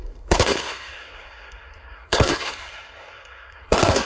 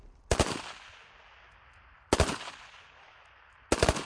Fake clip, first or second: first